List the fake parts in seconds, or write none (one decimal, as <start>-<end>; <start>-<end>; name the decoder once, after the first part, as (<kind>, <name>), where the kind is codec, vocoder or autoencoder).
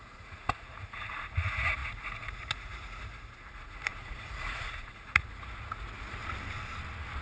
0.0-6.2 (vocoder, Vocos)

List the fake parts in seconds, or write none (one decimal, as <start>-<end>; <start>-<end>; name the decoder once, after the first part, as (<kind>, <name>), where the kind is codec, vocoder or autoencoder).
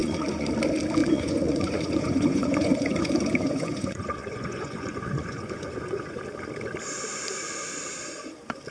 0.0-0.5 (vocoder, Vocos); 1.0-6.2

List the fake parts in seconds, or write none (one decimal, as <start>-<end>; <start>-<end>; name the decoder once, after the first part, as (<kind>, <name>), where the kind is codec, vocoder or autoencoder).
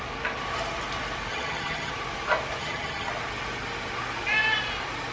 1.3-1.9 (vocoder, HiFi-GAN); 2.6-3.1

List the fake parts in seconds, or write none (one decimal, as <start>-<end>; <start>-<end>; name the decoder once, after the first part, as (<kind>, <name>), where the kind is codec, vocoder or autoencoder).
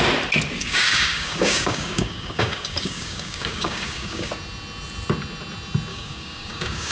0.6-4.3 (codec, DAC); 5.9-6.9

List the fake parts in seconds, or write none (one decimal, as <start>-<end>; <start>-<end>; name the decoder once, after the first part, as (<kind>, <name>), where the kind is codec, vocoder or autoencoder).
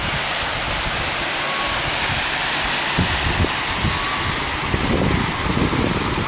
none